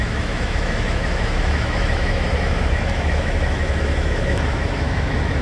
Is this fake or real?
fake